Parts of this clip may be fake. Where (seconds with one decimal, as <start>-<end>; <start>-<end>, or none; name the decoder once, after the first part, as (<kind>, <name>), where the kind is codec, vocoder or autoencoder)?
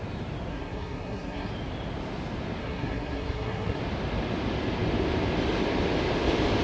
0.5-1.5 (codec, SNAC); 2.6-3.8